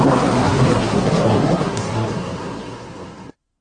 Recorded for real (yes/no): no